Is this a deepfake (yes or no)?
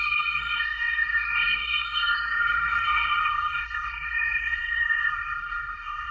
yes